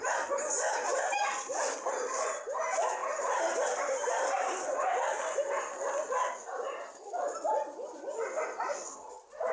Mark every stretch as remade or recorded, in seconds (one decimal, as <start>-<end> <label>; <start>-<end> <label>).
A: 0.0-9.5 recorded